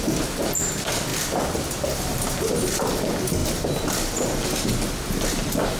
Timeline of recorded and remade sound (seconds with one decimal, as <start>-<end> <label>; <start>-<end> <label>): 0.0-1.1 recorded; 1.1-2.9 remade; 2.9-3.4 recorded; 3.4-4.1 remade; 4.1-5.8 recorded